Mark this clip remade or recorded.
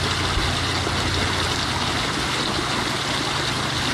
recorded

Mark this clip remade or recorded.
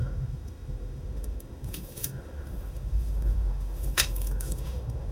remade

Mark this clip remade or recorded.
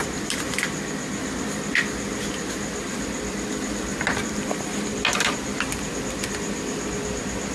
recorded